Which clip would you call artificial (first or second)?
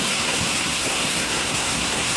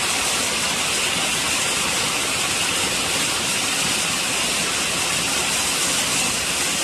first